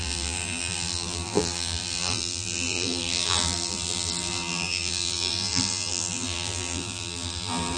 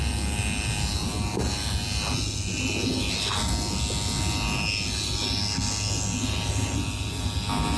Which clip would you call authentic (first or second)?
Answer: second